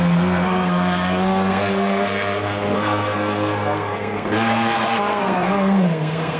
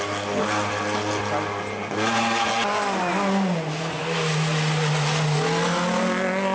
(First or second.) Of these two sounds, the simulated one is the first